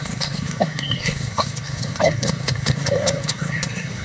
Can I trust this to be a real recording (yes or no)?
no